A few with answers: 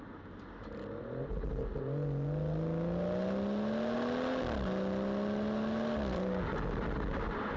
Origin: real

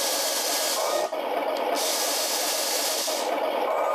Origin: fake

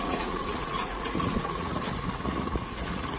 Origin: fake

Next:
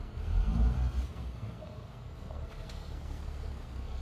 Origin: fake